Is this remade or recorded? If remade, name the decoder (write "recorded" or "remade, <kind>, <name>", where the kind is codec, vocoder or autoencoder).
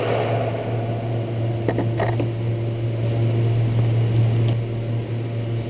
recorded